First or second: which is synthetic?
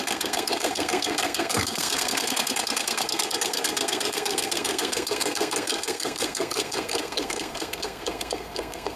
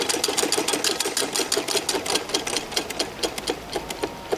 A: first